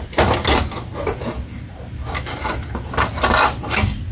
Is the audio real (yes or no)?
yes